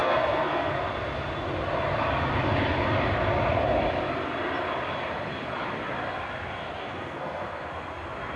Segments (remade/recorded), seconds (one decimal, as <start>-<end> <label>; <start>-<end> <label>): 0.0-0.7 remade; 0.7-6.8 recorded; 6.8-7.7 remade; 7.7-8.4 recorded